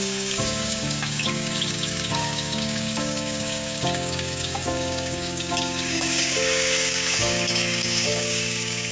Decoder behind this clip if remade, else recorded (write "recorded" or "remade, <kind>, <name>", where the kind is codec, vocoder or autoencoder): remade, codec, DAC